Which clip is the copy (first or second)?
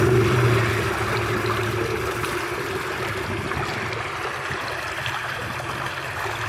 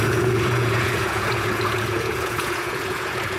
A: second